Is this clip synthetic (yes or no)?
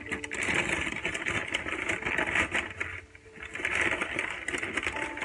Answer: no